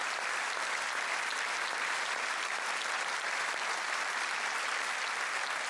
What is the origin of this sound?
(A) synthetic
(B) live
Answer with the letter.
A